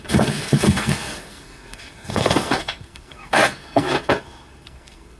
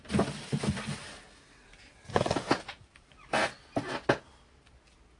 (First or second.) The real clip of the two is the second